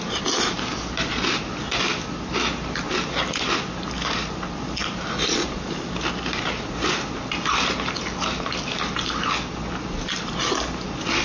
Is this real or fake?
real